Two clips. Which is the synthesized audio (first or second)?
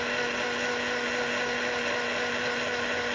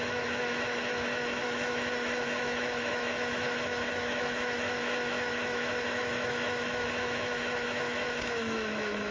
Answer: second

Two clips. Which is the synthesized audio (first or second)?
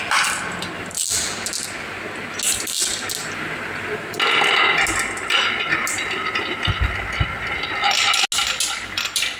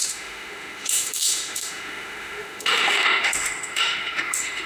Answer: second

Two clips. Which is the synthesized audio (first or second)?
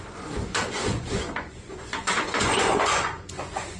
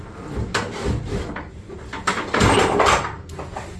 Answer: first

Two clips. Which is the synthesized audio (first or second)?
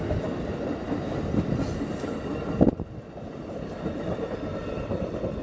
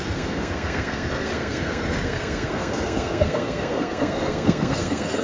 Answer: second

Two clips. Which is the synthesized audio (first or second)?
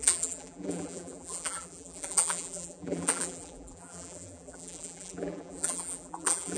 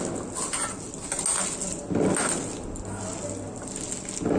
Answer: first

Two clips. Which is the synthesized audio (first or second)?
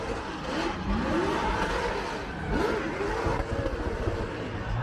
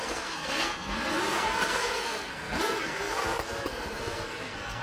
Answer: second